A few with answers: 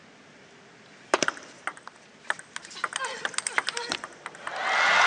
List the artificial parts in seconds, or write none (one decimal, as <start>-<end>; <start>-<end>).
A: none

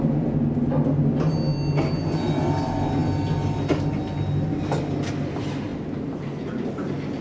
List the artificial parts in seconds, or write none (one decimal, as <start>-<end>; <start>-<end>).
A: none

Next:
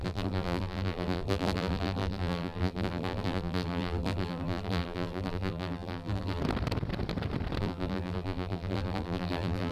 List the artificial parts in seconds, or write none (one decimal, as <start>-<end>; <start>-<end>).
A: 0.0-6.4; 7.6-9.7

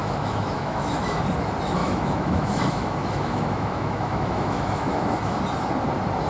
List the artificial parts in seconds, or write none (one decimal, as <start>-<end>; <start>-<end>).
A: 0.0-1.2; 1.8-5.4

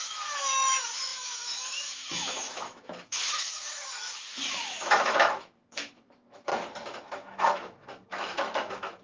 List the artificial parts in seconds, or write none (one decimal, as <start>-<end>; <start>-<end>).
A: 0.0-6.5; 7.1-9.0

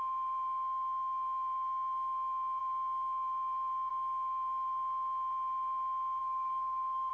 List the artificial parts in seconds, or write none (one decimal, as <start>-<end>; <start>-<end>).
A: 6.2-7.1